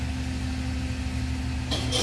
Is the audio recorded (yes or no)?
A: yes